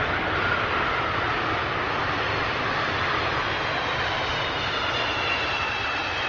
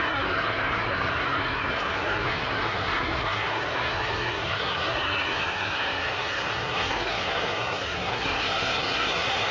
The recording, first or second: first